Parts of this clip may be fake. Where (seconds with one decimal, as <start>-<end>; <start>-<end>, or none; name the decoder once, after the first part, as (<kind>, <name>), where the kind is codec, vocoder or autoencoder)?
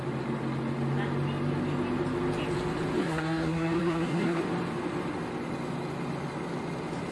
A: 3.0-4.4 (codec, SNAC)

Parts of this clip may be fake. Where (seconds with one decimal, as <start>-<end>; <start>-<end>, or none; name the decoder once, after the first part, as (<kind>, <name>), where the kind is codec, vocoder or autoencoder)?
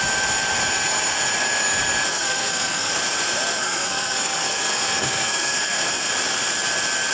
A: 2.1-2.9 (codec, SNAC); 3.6-6.1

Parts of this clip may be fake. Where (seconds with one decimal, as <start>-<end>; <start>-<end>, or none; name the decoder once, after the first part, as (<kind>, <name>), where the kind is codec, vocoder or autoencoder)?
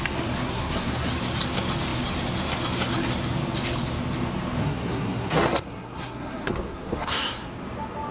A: 0.4-1.1 (codec, SNAC); 4.6-7.5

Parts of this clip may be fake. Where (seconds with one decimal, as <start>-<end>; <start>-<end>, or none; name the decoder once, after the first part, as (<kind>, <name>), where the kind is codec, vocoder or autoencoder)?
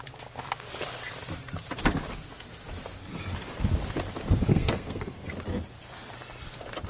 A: 4.5-5.3 (codec, SNAC)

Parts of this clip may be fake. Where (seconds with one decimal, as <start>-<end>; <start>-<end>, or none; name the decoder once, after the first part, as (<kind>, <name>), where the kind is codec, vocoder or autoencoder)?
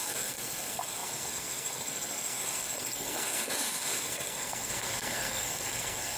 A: 0.0-6.2 (codec, SNAC)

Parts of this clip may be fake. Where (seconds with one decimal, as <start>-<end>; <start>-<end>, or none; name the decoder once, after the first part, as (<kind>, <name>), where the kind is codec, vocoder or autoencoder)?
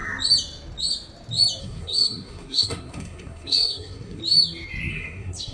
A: 1.6-4.2 (codec, SNAC); 4.9-5.5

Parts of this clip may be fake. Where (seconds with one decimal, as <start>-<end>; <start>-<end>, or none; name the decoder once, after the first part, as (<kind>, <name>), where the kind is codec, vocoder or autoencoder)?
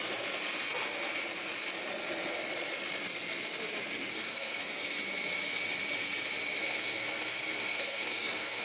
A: 4.1-4.6 (codec, SNAC); 6.6-8.6